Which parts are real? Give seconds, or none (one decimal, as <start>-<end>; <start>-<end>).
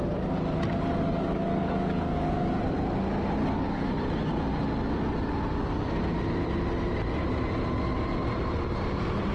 0.0-0.9; 2.5-3.4; 3.9-9.3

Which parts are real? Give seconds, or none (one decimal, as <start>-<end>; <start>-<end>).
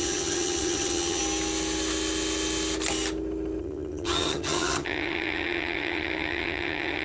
1.2-3.6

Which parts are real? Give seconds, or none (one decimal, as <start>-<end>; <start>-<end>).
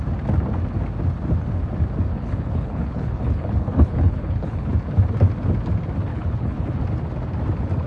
0.0-2.1; 4.7-6.1; 6.8-7.9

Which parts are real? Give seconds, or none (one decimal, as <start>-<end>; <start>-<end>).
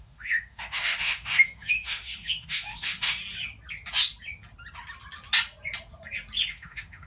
3.2-6.5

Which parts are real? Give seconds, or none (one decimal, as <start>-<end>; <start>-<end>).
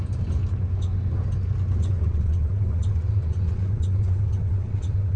0.0-1.8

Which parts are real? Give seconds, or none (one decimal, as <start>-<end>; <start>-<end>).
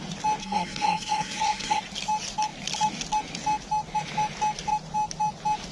0.0-0.4; 1.8-5.7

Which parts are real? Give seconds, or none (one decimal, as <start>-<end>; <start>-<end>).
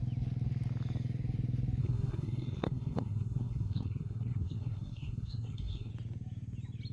0.0-1.8; 5.9-6.9